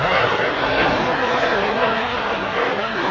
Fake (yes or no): yes